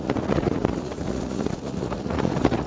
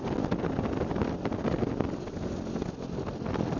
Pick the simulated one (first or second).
first